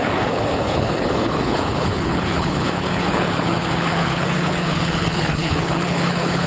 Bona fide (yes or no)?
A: no